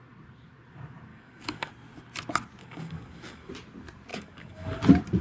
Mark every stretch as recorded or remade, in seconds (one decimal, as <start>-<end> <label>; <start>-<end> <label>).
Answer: 0.0-1.1 recorded; 1.1-1.7 remade; 1.7-2.6 recorded; 2.6-3.5 remade; 3.5-4.1 recorded; 4.1-4.8 remade; 4.8-5.2 recorded